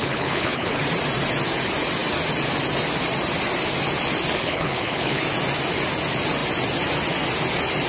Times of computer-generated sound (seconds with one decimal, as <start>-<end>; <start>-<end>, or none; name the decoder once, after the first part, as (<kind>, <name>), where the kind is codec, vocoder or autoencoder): 0.0-0.8 (codec, HILCodec); 4.4-5.2